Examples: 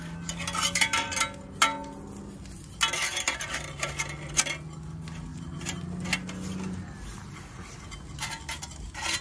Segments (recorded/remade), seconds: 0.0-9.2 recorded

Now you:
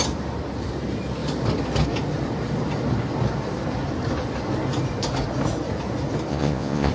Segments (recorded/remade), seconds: 0.0-6.3 recorded; 6.3-6.9 remade